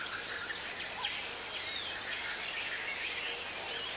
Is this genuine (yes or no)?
yes